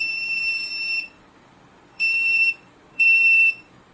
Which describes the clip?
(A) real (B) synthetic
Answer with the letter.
B